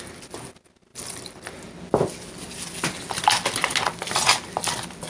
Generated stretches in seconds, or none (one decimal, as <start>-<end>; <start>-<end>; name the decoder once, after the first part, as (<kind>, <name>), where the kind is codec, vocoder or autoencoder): none